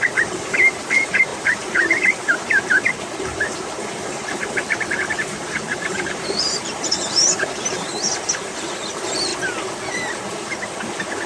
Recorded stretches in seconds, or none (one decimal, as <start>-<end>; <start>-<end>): 9.3-11.3